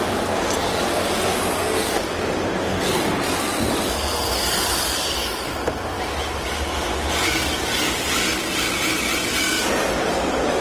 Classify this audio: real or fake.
real